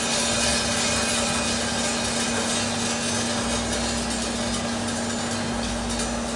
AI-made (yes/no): no